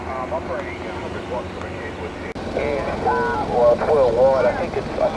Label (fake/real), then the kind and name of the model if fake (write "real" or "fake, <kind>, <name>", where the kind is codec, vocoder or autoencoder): real